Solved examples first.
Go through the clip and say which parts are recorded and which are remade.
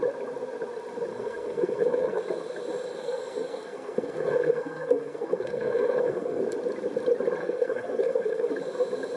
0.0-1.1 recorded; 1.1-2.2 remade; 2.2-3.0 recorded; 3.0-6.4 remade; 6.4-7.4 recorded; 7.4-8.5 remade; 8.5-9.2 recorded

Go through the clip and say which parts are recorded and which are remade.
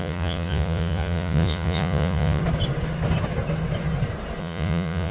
0.0-2.4 remade; 2.4-4.4 recorded; 4.4-5.1 remade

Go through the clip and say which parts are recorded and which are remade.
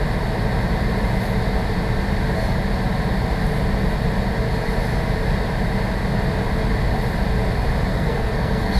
0.0-7.9 recorded; 7.9-8.8 remade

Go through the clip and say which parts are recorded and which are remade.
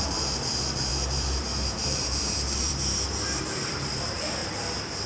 0.0-4.4 remade; 4.4-5.1 recorded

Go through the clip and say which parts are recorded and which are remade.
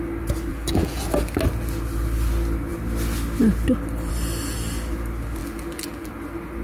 0.0-0.5 recorded; 0.5-1.0 remade; 1.0-5.4 recorded; 5.4-6.1 remade; 6.1-6.6 recorded